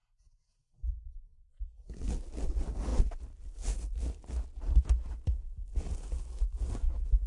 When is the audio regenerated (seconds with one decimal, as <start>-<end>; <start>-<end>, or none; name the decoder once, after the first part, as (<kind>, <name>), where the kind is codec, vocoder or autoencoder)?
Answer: 0.0-1.9 (vocoder, Vocos)